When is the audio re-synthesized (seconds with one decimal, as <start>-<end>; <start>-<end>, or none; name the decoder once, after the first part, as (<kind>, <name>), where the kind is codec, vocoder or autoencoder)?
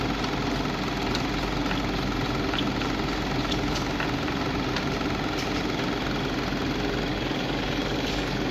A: 7.1-8.5 (codec, DAC)